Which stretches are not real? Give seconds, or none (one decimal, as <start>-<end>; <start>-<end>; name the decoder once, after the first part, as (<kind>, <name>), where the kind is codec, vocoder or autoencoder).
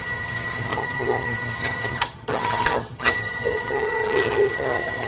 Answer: 0.0-5.1 (vocoder, HiFi-GAN)